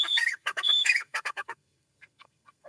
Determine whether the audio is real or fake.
fake